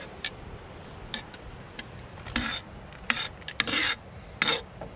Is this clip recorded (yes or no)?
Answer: yes